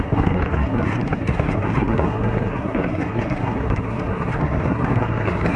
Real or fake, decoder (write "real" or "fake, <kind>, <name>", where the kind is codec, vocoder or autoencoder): fake, codec, SNAC